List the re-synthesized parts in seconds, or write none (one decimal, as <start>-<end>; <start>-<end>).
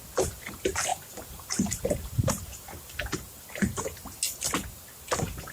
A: 0.9-4.2